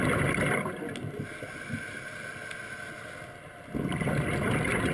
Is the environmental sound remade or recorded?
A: recorded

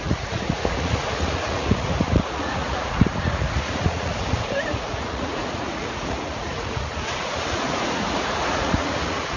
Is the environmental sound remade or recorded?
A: remade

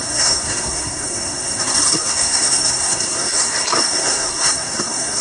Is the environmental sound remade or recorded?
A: remade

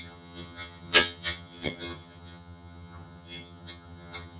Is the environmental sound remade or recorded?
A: remade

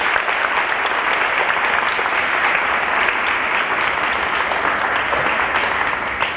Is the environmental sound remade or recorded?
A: recorded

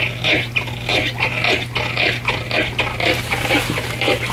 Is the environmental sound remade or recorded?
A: recorded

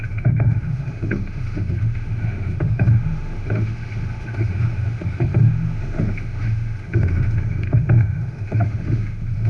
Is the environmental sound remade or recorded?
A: remade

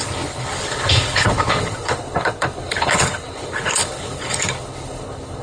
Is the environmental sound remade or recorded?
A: remade